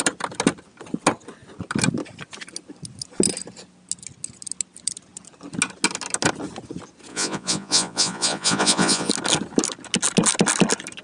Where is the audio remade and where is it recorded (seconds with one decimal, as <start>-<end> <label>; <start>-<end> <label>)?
0.0-7.1 recorded; 7.1-9.1 remade; 9.1-11.0 recorded